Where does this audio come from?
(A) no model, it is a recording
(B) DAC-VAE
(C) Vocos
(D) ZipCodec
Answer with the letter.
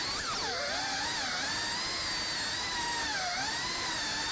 A